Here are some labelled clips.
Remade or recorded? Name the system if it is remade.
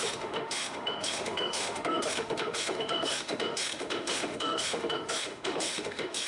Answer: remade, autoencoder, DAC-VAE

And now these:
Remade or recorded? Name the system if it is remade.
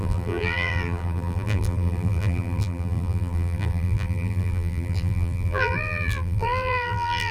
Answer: remade, vocoder, BigVGAN v2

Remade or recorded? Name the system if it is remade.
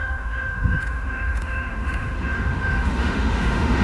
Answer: remade, autoencoder, DAC-VAE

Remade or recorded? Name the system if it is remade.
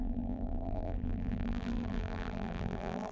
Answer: remade, vocoder, BigVGAN v2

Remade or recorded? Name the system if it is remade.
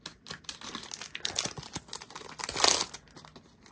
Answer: recorded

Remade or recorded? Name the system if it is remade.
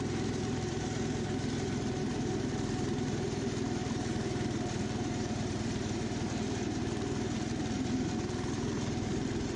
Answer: remade, vocoder, BigVGAN v2